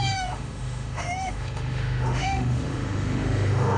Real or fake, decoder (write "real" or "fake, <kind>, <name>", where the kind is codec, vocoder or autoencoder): fake, autoencoder, DAC-VAE